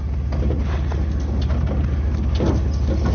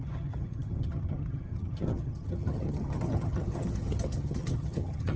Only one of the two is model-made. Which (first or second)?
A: second